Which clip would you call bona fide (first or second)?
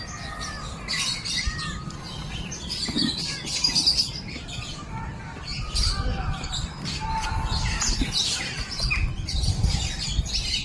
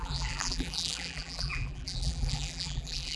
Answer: first